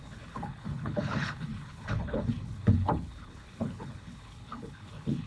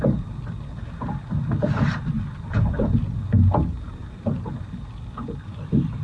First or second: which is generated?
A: first